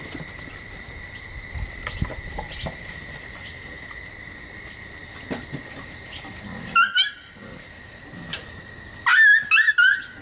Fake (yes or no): no